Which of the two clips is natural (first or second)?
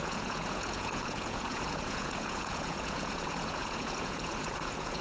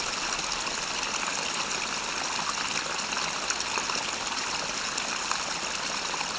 second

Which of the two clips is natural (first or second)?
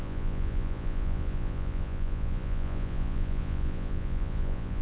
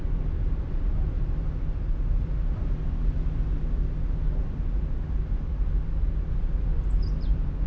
second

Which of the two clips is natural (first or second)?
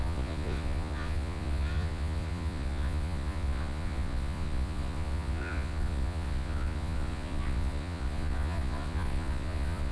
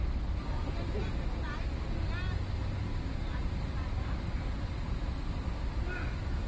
second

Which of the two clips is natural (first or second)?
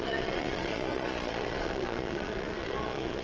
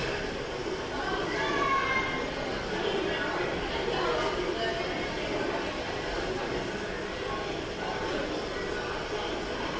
second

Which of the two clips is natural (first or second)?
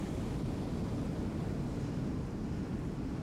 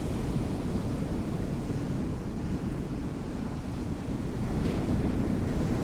first